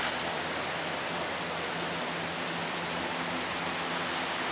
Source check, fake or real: real